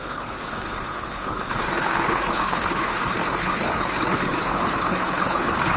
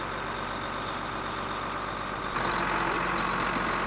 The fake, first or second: first